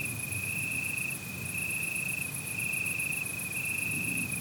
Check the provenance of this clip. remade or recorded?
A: recorded